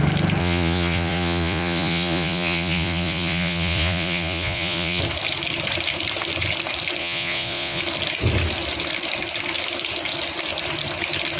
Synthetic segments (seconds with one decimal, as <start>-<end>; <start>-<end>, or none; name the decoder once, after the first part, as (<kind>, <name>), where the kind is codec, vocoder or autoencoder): 0.4-5.0 (vocoder, Vocos); 7.0-7.8